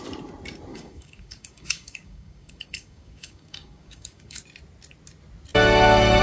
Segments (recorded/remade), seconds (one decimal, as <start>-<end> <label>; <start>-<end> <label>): 0.0-0.7 recorded; 0.7-4.4 remade; 4.4-6.2 recorded